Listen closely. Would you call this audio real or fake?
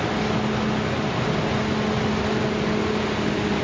real